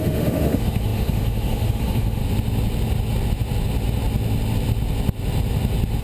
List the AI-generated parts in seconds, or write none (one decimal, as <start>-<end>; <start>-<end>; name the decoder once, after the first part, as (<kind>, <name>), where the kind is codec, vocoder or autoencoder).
0.0-2.2 (autoencoder, DAC-VAE)